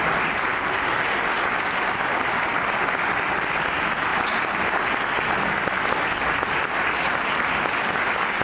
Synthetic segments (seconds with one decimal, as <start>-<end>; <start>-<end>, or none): none